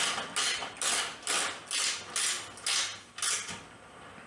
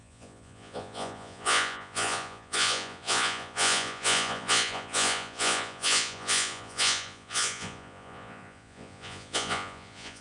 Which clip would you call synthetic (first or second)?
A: second